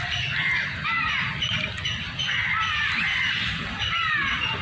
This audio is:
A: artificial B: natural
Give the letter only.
B